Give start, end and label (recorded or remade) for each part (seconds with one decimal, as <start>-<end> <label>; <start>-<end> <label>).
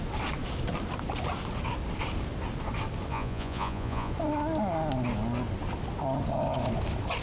0.0-3.1 recorded; 3.1-4.1 remade; 4.1-7.2 recorded